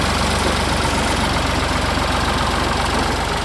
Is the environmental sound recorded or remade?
recorded